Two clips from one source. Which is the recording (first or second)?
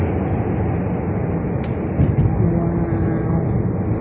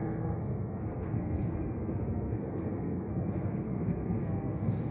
first